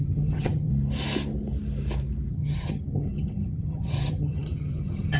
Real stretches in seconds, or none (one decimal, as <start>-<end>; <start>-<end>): 0.7-2.3